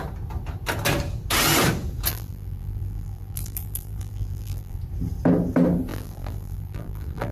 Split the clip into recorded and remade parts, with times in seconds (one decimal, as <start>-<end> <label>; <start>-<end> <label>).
0.0-2.1 recorded; 2.1-4.8 remade; 4.8-5.9 recorded; 5.9-7.3 remade